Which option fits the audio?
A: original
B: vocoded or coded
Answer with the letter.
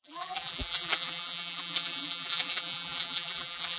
B